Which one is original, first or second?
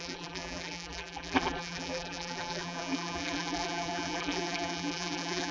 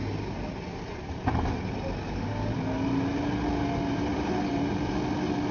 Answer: second